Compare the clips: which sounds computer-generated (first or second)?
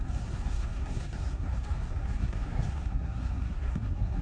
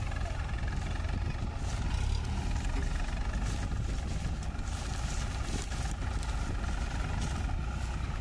first